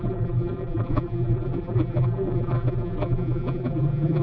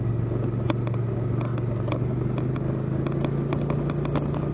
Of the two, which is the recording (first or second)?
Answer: second